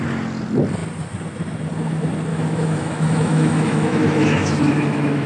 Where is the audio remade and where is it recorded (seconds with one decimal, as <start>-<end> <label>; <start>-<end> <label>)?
0.0-2.3 recorded; 2.3-5.3 remade

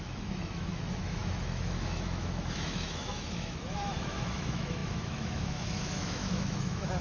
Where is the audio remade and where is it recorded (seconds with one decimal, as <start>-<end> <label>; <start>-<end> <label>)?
0.0-7.0 remade

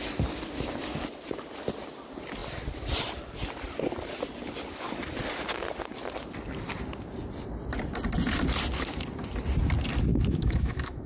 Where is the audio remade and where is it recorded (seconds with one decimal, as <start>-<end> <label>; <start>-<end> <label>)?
0.0-10.1 recorded; 10.1-11.1 remade

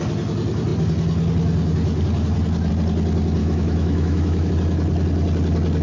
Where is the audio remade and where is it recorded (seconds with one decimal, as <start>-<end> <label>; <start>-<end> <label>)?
0.0-3.4 recorded; 3.4-4.5 remade; 4.5-5.8 recorded

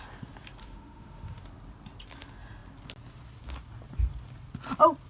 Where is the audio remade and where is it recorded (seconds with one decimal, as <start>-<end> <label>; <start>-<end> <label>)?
0.0-0.6 recorded; 0.6-1.4 remade; 1.4-5.1 recorded

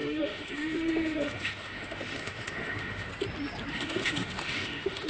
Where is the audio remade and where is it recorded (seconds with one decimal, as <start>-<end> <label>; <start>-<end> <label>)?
0.0-3.1 remade; 3.1-3.7 recorded; 3.7-5.1 remade

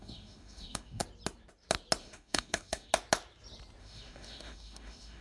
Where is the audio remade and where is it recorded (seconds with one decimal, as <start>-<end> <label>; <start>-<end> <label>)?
0.0-1.0 remade; 1.0-2.0 recorded; 2.0-2.9 remade; 2.9-3.8 recorded; 3.8-5.2 remade